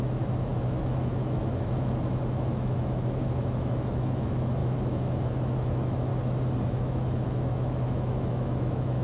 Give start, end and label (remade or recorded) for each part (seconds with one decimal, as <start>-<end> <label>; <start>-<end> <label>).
0.0-6.1 remade; 6.1-6.6 recorded; 6.6-9.0 remade